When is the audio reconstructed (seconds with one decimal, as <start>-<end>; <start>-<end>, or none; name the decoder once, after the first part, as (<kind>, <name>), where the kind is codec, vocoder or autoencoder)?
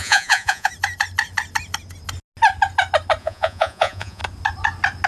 0.0-0.7 (vocoder, Vocos); 3.2-4.2